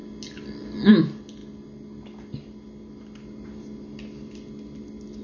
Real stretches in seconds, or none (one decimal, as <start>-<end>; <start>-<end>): 0.0-5.2